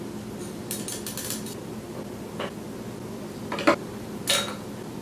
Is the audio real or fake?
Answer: real